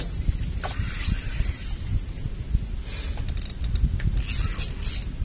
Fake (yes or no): no